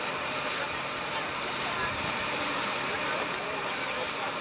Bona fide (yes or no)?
no